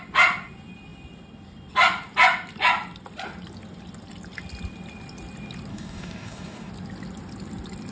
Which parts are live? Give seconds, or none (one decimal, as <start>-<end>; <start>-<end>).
0.0-5.7; 6.7-7.9